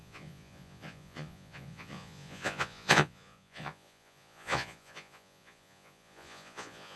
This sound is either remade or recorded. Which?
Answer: remade